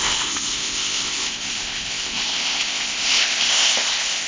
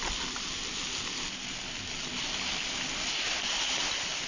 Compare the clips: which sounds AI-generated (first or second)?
first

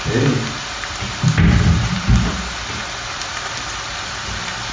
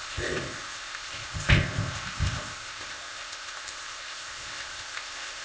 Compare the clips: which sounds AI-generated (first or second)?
second